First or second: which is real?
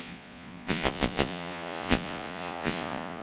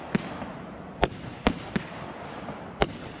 second